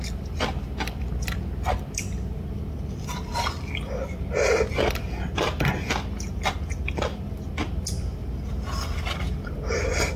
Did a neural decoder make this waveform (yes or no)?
no